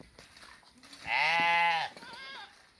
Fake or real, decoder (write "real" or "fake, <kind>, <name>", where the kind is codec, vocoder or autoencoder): real